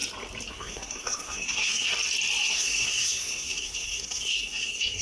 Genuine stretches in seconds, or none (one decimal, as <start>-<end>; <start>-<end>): 0.0-0.5; 1.9-2.5